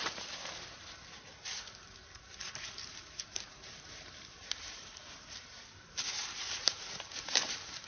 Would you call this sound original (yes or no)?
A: no